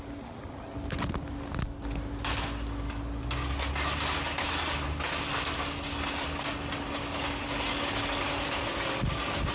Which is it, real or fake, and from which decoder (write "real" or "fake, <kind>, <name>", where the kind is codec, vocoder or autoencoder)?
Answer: real